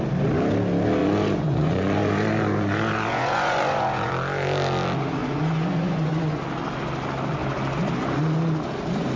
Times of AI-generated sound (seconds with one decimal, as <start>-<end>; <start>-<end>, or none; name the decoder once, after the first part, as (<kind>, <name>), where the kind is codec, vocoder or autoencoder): 1.0-4.1 (vocoder, Vocos); 5.2-6.4